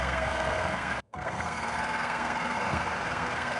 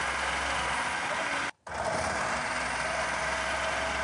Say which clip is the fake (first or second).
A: first